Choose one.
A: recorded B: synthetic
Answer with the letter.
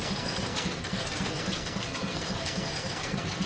B